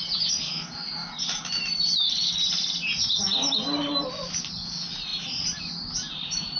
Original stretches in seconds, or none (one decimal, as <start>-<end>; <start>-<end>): 0.0-6.6